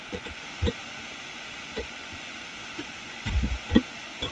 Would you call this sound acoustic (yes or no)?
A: no